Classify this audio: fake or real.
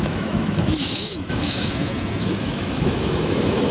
fake